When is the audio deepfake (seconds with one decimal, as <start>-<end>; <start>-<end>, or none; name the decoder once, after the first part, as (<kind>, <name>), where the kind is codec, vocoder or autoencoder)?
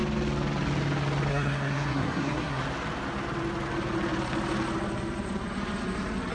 1.3-2.6 (codec, SNAC)